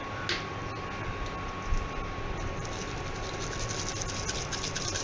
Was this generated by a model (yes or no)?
no